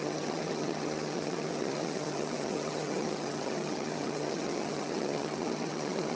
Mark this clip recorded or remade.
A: remade